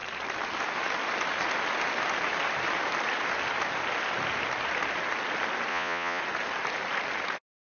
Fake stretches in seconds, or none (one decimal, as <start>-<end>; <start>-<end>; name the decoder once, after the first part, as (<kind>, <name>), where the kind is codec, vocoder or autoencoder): 5.7-6.2 (vocoder, Vocos)

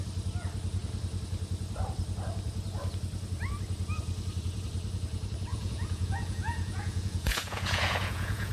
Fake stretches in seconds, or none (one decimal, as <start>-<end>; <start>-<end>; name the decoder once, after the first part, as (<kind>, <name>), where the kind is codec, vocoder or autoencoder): 5.5-8.5 (vocoder, Vocos)

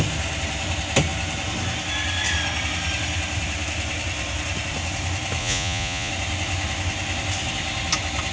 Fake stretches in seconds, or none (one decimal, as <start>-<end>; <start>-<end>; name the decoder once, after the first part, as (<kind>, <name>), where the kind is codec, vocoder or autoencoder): 5.4-6.1 (vocoder, Vocos)

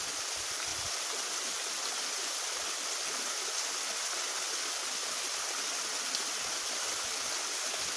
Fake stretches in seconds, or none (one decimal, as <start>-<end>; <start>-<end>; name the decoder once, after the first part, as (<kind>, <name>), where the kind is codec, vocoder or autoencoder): none